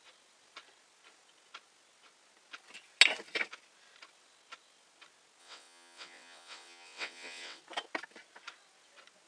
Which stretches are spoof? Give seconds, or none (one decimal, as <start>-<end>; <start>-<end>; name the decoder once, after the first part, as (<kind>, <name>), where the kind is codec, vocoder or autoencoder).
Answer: 5.4-7.6 (vocoder, WaveNeXt)

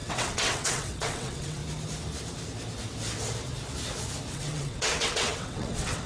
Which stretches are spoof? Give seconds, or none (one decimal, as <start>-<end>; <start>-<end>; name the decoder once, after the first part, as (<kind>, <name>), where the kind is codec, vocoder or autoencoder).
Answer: 0.0-1.6 (vocoder, WaveNeXt); 4.3-6.1